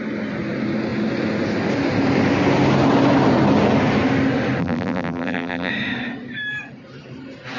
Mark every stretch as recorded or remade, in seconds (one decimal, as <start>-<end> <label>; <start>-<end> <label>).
0.0-4.6 recorded; 4.6-5.7 remade; 5.7-7.6 recorded